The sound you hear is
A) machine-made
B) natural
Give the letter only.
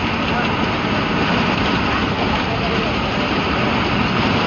B